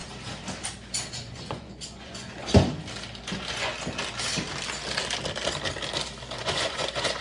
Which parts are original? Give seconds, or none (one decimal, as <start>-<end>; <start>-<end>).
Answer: 0.0-1.1; 2.5-3.2; 3.7-6.4